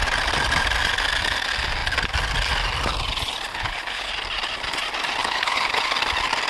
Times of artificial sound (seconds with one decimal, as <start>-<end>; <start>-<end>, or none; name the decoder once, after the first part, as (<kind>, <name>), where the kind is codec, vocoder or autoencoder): 3.5-4.1 (codec, HILCodec); 5.2-5.8